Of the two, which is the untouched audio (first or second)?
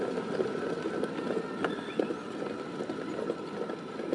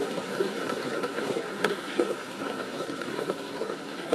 first